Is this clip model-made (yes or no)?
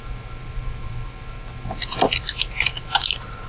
no